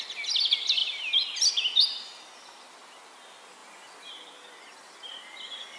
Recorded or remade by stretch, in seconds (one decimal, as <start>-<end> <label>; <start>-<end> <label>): 0.0-5.8 recorded